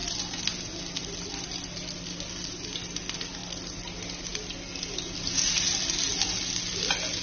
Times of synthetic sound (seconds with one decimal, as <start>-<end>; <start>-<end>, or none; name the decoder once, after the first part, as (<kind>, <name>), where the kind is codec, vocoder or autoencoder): none